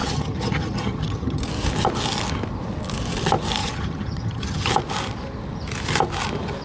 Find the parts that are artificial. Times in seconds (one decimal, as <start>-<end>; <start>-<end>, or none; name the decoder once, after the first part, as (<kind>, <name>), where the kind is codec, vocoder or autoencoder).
0.0-1.4 (vocoder, HiFi-GAN); 3.6-4.7